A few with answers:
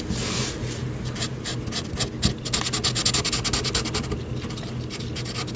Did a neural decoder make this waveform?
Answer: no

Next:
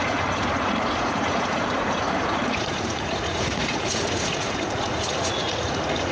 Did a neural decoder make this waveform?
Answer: yes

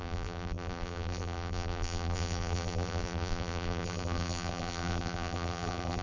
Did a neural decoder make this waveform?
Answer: yes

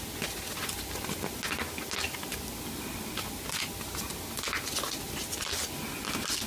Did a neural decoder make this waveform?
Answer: no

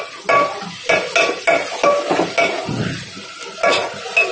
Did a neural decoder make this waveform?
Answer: no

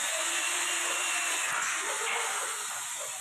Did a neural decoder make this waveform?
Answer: yes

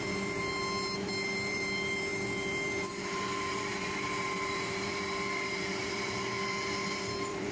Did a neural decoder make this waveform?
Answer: yes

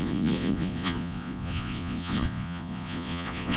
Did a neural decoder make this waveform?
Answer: yes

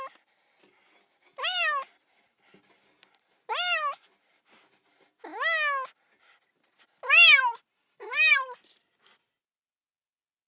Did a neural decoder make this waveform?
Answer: no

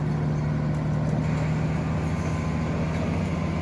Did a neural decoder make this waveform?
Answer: no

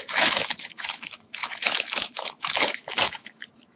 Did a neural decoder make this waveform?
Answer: yes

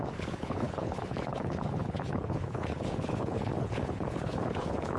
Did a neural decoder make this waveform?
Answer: yes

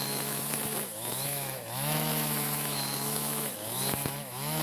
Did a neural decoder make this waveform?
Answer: yes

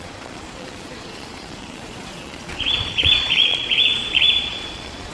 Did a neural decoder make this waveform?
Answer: yes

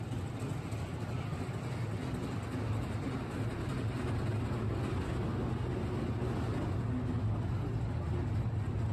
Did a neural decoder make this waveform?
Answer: no